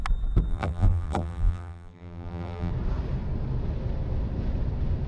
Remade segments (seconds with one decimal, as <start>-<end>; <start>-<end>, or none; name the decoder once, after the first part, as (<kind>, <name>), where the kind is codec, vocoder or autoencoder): 0.5-2.7 (vocoder, BigVGAN v2)